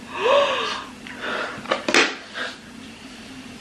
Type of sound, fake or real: real